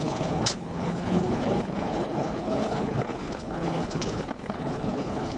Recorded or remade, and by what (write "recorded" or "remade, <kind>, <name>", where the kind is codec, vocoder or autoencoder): remade, codec, HILCodec